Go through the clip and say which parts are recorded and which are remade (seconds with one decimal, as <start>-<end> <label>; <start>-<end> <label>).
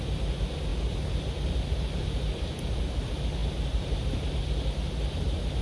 0.0-5.6 recorded